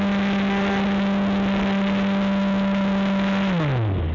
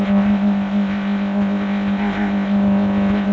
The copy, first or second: second